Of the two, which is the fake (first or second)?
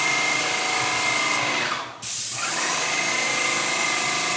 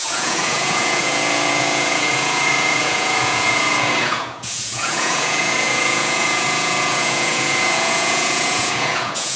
second